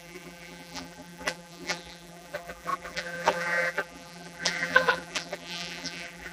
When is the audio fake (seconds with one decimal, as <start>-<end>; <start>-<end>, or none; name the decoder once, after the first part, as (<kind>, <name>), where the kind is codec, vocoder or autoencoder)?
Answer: 0.0-6.3 (vocoder, BigVGAN v2)